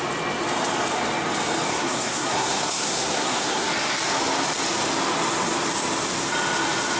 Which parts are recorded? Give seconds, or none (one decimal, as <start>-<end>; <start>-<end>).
0.0-1.7; 3.7-7.0